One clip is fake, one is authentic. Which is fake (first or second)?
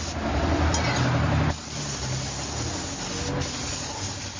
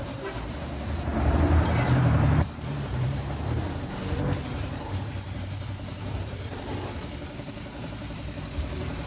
second